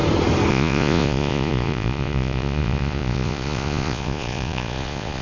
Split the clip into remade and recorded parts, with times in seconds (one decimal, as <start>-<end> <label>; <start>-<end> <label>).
0.0-0.5 recorded; 0.5-5.2 remade